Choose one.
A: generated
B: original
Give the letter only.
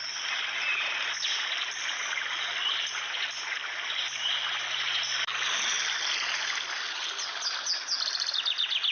B